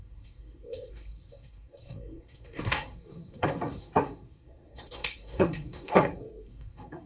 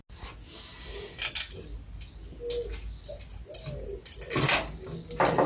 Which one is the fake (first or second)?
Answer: first